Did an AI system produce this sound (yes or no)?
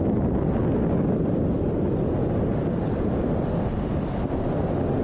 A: no